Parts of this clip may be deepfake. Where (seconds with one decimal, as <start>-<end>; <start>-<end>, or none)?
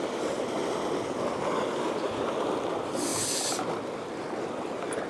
none